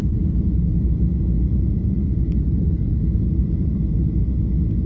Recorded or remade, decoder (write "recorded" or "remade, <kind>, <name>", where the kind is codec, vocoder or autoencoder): recorded